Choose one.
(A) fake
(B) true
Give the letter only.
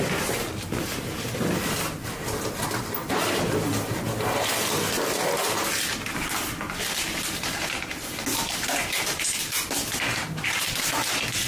B